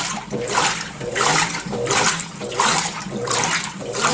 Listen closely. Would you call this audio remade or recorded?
recorded